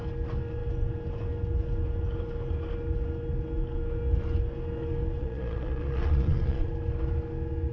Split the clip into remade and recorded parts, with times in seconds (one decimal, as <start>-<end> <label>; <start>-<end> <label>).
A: 0.0-5.2 recorded; 5.2-6.7 remade; 6.7-7.7 recorded